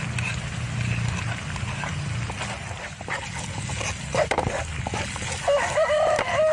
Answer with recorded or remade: recorded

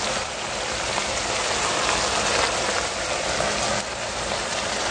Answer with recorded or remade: recorded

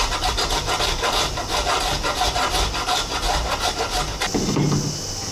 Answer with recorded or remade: recorded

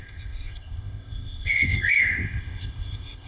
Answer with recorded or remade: remade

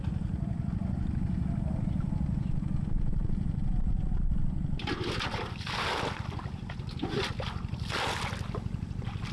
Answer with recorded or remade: recorded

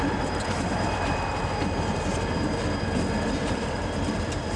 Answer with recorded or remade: remade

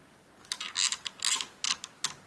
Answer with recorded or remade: recorded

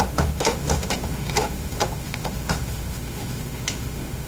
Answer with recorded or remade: remade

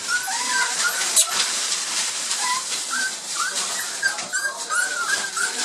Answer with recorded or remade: remade